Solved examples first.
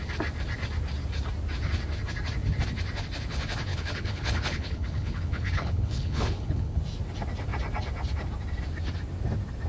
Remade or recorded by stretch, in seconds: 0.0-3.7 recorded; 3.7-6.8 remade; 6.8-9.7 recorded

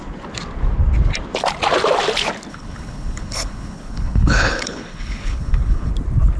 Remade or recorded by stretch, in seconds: 0.0-2.5 recorded; 2.5-5.9 remade; 5.9-6.4 recorded